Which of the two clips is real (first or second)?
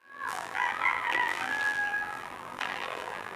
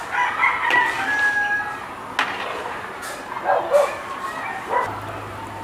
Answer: second